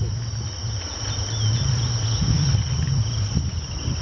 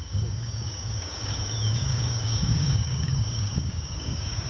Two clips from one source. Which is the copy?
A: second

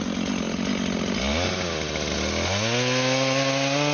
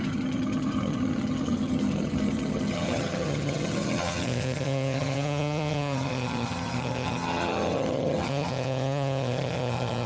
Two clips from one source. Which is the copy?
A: second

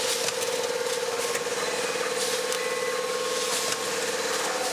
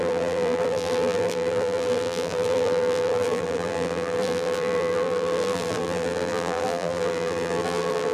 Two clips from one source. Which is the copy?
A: second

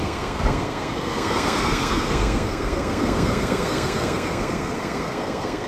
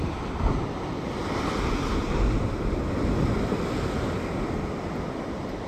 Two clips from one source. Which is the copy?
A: first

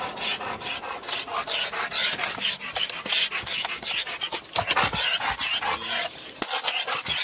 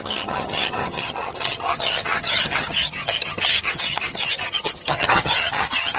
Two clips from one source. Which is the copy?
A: second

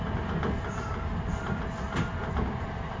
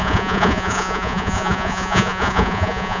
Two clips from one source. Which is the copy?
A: second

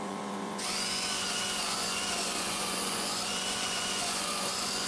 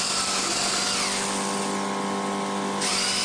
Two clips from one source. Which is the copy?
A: first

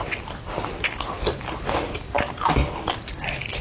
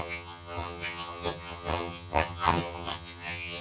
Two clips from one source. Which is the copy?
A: second